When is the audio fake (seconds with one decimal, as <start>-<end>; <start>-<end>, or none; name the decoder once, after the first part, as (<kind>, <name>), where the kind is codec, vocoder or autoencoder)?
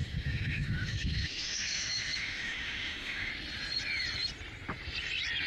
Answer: 0.0-3.3 (autoencoder, DAC-VAE)